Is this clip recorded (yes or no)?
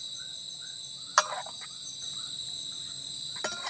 yes